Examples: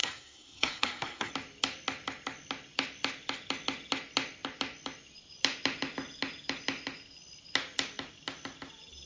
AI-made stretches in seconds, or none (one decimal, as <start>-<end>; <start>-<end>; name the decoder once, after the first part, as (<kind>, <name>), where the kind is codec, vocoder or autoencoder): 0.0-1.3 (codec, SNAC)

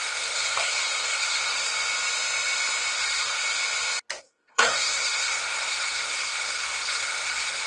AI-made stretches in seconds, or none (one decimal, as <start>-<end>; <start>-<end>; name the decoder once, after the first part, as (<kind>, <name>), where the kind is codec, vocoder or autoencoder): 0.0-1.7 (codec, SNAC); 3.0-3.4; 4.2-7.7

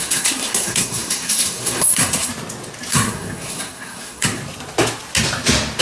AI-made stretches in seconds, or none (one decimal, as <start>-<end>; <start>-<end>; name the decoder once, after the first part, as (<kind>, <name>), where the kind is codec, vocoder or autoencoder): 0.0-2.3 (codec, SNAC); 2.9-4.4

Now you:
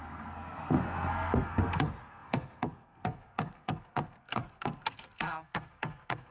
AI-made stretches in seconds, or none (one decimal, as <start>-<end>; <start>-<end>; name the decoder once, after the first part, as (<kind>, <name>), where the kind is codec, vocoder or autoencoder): 0.0-6.3 (codec, SNAC)

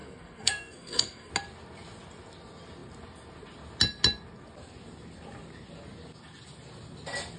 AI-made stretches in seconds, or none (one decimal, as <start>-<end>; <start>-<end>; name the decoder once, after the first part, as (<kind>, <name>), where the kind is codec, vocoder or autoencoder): 0.0-1.3 (codec, SNAC)